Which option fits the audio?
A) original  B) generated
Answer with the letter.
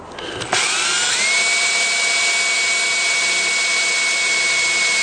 A